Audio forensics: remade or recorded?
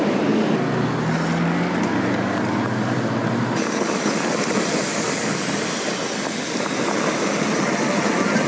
recorded